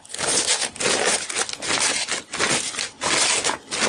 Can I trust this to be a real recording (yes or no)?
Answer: yes